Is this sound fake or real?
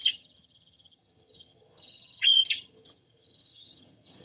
fake